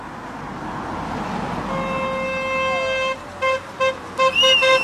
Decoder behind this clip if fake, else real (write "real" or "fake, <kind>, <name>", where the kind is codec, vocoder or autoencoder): real